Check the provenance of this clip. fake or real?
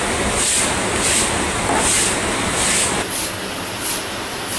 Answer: real